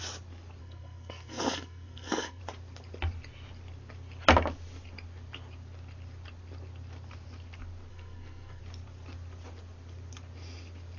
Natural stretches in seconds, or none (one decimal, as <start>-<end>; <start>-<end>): 0.0-0.6; 2.4-7.9; 8.6-11.0